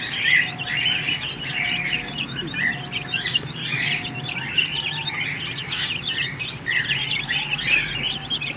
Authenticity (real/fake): real